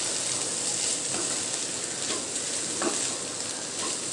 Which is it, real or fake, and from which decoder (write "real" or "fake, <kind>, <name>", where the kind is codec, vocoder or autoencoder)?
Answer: real